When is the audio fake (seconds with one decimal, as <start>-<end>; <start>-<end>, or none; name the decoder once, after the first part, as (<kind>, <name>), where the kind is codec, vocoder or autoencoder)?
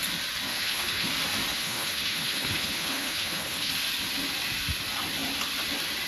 0.5-1.1 (codec, HILCodec); 1.5-3.7